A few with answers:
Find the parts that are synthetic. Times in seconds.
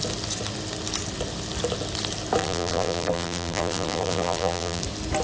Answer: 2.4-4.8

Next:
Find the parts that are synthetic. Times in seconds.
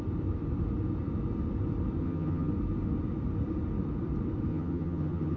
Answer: 2.0-2.5; 4.5-5.4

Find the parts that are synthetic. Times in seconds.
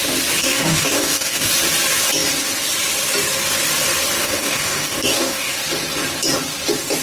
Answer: 0.4-1.5; 4.2-5.6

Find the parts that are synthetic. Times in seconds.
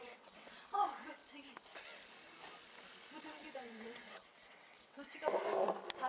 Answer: 0.0-1.2; 3.2-5.2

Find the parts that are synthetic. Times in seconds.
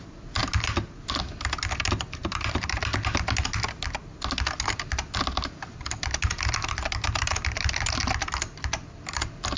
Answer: 2.2-2.8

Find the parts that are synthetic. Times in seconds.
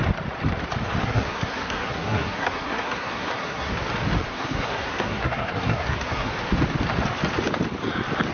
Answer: 1.0-3.7; 4.3-6.3